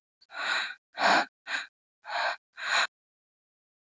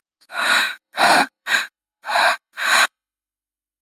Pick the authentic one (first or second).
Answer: first